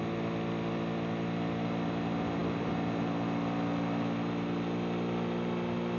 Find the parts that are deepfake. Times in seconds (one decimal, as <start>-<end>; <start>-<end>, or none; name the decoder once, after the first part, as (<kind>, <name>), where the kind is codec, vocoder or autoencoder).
none